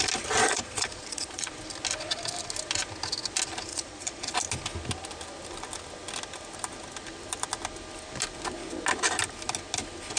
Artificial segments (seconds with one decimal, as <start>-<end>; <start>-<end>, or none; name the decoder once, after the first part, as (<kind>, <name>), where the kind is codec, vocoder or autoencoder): 0.4-1.5 (vocoder, Vocos); 3.7-4.2